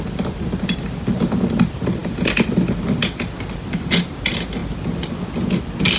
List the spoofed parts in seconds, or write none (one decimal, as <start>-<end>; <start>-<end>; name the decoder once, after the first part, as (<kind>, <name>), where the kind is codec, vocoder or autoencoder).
none